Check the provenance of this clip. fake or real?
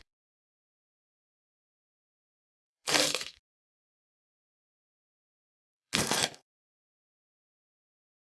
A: fake